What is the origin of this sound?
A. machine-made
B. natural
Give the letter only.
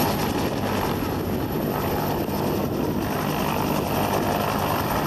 B